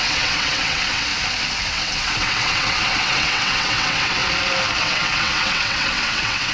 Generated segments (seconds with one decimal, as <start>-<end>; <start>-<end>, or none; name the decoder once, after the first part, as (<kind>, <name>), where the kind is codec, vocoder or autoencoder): 0.0-1.1 (vocoder, WaveNeXt); 1.6-4.2; 4.8-6.5